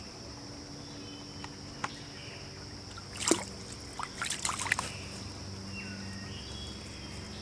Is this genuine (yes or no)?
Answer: yes